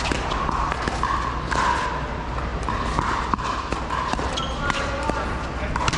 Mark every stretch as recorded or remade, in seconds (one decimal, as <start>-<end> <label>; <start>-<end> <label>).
0.0-2.5 recorded; 2.5-5.4 remade; 5.4-6.0 recorded